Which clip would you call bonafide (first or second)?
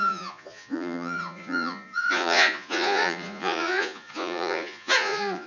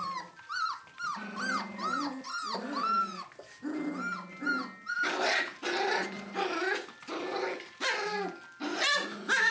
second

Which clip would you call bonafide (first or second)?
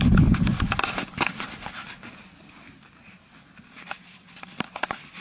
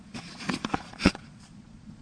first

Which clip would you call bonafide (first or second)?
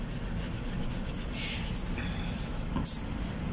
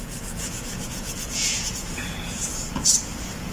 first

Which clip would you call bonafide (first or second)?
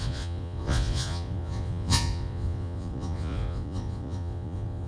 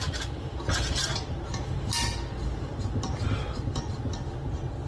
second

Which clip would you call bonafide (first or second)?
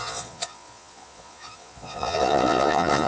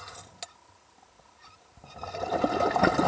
second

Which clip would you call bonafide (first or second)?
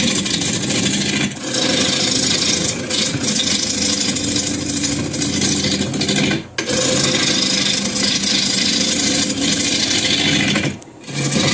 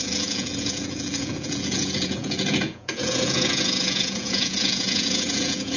first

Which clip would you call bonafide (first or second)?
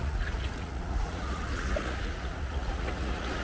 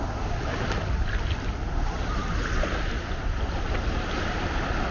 second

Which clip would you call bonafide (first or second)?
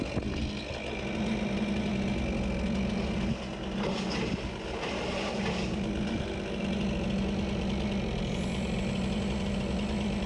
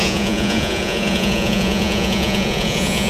first